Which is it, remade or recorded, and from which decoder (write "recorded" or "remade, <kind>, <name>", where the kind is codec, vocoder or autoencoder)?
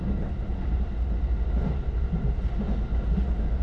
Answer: recorded